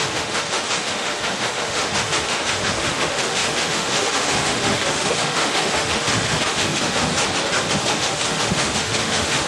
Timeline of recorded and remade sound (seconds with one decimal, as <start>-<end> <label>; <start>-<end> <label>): 0.0-7.1 remade; 7.1-7.7 recorded; 7.7-9.5 remade

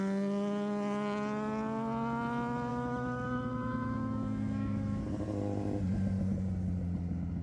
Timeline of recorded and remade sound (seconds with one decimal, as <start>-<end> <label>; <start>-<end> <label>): 0.0-2.7 recorded; 2.7-5.0 remade; 5.0-7.4 recorded

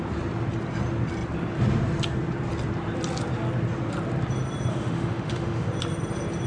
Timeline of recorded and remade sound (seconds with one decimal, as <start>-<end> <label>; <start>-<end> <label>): 0.0-4.7 recorded; 4.7-5.7 remade; 5.7-6.5 recorded

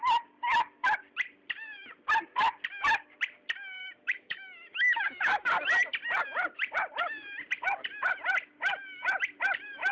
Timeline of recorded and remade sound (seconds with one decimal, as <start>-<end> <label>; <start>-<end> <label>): 0.0-3.8 recorded; 3.8-5.5 remade; 5.5-9.9 recorded